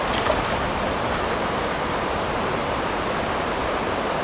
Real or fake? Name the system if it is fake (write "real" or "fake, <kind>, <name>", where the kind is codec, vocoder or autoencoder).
real